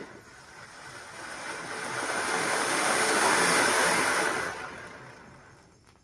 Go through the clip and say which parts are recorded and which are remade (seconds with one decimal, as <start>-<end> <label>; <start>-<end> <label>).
0.0-2.4 recorded; 2.4-3.4 remade; 3.4-6.0 recorded